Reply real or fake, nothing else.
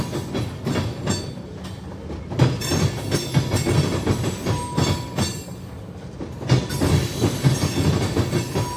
real